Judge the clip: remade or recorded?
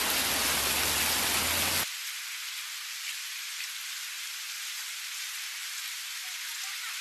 recorded